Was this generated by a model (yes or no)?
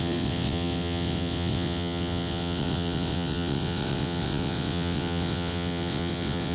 yes